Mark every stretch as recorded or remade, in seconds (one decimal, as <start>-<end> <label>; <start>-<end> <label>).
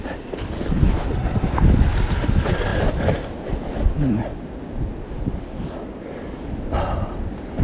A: 0.0-7.6 recorded